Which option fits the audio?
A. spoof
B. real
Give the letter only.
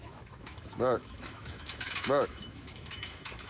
A